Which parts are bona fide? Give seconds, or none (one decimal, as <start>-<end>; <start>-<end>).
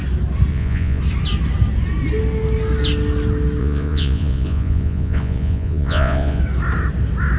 0.0-0.5; 1.0-3.6; 6.4-7.4